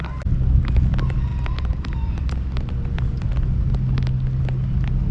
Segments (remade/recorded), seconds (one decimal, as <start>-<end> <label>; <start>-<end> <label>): 0.0-5.1 recorded